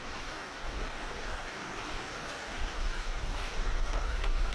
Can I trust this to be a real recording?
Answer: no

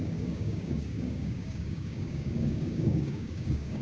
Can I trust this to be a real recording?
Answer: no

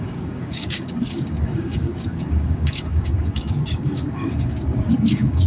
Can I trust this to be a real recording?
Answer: no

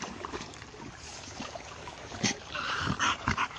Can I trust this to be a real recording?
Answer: no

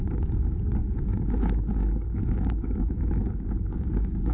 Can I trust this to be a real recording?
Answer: no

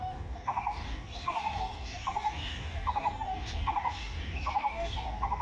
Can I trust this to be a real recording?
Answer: no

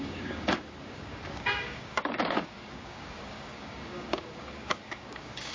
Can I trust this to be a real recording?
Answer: no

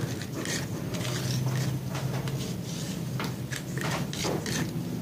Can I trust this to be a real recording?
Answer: yes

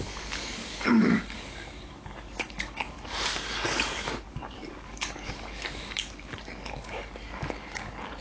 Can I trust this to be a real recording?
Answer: no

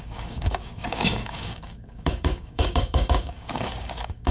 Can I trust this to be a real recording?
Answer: no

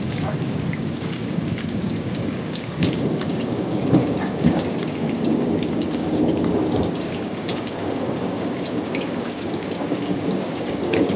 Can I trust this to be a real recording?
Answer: no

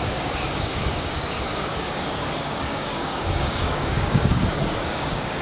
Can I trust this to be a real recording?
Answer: no